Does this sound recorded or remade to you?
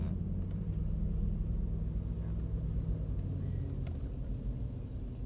recorded